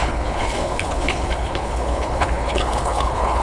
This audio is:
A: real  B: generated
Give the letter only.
B